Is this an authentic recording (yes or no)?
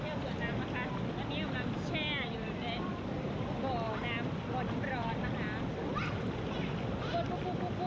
yes